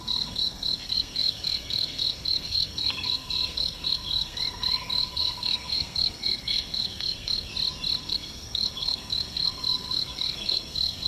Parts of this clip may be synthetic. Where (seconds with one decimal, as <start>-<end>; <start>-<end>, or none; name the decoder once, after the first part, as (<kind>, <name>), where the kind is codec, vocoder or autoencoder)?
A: 0.0-7.5 (codec, SNAC); 8.0-11.1